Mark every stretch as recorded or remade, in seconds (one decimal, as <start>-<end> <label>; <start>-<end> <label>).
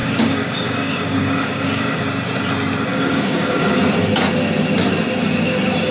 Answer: 0.0-2.0 remade; 2.0-2.9 recorded; 2.9-3.7 remade; 3.7-5.9 recorded